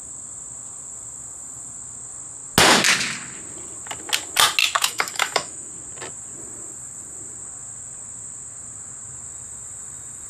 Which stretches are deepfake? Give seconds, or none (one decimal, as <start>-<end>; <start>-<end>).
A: 4.6-5.7

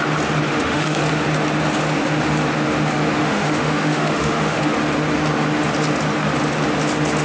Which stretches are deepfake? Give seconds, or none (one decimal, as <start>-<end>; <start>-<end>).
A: 0.5-1.0; 3.2-4.6

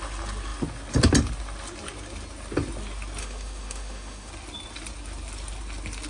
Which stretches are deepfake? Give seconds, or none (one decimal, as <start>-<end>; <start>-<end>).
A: 3.2-4.3

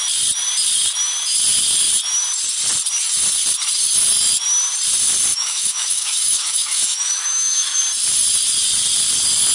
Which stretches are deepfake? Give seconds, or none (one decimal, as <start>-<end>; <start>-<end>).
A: 5.3-7.8

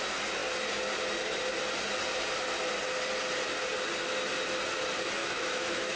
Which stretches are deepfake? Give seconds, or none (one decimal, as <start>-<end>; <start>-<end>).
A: 5.2-6.0

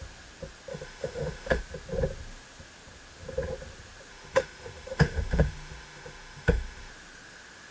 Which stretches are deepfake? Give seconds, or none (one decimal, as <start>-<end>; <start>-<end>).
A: 0.7-1.6; 4.1-6.9